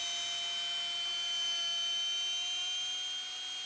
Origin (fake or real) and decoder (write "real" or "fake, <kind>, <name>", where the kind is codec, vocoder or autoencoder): real